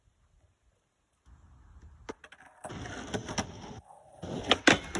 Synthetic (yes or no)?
no